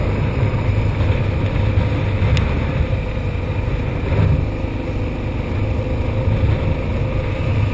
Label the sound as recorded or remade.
recorded